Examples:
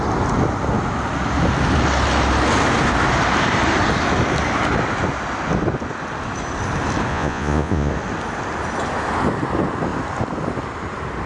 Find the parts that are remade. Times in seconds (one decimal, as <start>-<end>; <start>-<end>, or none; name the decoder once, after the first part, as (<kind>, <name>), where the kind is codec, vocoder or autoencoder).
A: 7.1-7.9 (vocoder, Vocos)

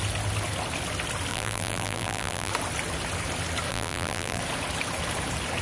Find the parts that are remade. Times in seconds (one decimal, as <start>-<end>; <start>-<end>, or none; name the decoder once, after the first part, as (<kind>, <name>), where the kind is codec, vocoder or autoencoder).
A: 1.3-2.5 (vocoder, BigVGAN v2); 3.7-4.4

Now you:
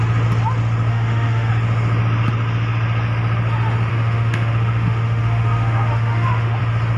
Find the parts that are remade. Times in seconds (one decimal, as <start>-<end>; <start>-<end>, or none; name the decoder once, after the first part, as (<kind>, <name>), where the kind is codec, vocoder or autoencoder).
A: 0.9-1.5 (autoencoder, DAC-VAE); 3.9-6.6

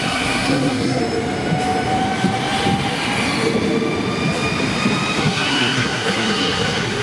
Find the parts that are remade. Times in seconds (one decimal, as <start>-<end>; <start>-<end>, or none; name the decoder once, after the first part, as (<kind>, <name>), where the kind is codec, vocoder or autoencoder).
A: 0.0-1.0 (codec, SNAC); 5.2-7.0

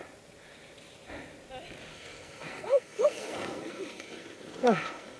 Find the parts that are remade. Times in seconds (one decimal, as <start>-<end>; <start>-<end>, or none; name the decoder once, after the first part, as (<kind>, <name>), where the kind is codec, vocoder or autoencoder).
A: 1.9-5.2 (codec, SNAC)